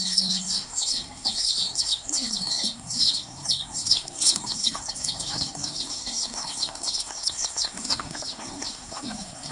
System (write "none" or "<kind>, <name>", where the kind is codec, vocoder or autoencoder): codec, SNAC